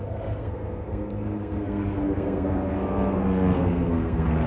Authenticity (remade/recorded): remade